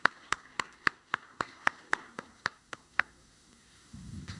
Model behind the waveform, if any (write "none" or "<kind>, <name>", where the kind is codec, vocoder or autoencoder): codec, SNAC